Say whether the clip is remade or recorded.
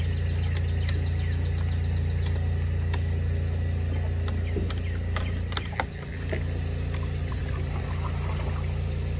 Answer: recorded